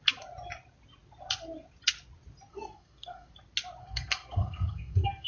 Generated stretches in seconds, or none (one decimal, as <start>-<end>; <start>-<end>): 2.5-3.3; 3.8-5.3